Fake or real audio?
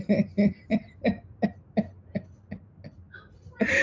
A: real